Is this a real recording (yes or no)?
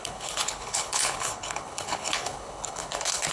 no